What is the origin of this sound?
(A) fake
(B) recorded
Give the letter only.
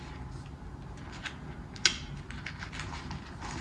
B